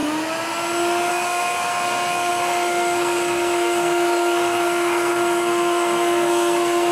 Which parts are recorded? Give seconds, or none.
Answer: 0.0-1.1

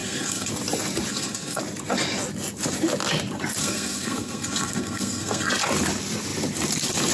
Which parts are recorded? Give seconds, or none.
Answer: 0.5-1.1; 1.6-3.6; 5.5-7.1

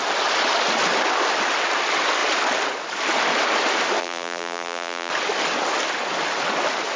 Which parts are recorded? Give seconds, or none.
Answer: 0.0-4.0; 5.1-7.0

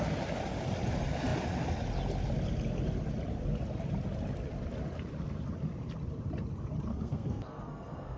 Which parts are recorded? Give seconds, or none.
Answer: 0.0-6.9

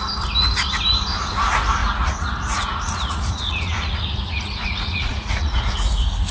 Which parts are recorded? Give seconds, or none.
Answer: 0.0-1.8; 5.6-6.3

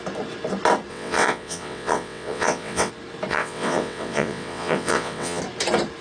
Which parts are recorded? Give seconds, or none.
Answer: 0.0-0.9; 2.9-3.3; 5.4-6.0